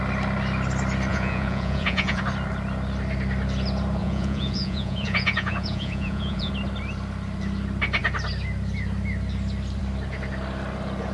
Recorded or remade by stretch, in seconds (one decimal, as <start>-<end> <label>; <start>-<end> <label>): 0.0-1.1 recorded; 1.1-2.2 remade; 2.2-4.0 recorded; 4.0-6.5 remade; 6.5-11.1 recorded